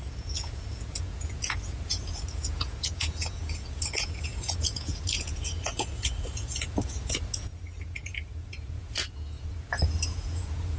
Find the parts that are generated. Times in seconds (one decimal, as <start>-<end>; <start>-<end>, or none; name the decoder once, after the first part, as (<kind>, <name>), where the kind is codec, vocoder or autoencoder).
0.0-10.8 (vocoder, Vocos)